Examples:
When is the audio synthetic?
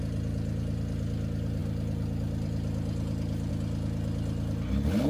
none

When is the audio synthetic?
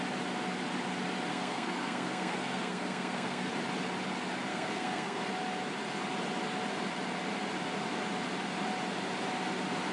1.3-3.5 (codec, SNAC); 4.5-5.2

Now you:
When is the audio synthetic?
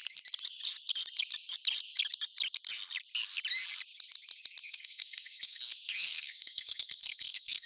4.6-7.7 (codec, SNAC)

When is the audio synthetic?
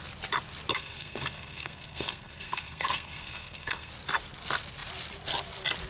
0.7-3.9 (codec, SNAC)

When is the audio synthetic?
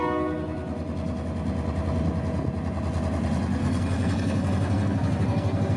3.6-5.8 (codec, SNAC)